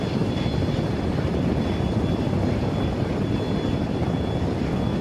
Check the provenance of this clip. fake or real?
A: real